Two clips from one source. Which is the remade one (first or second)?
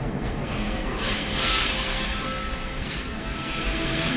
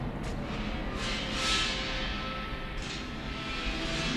first